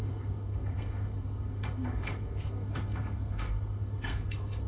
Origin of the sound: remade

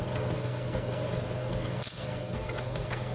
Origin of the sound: remade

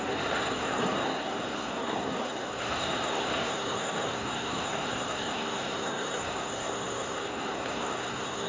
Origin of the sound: remade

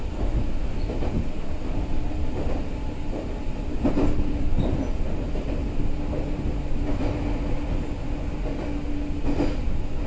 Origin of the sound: recorded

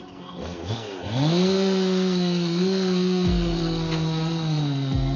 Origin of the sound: remade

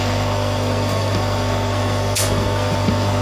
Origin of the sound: remade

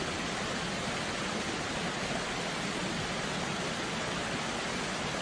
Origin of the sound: recorded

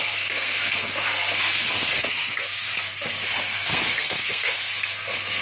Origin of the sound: remade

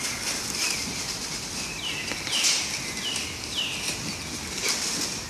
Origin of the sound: recorded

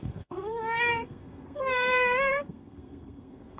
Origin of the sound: remade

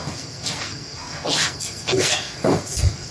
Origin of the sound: remade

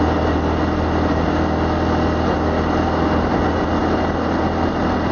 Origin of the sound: recorded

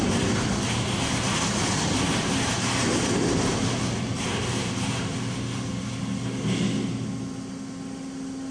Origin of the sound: recorded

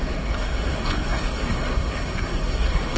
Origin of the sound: remade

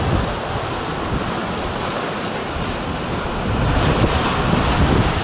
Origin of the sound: recorded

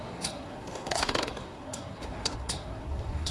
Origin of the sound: remade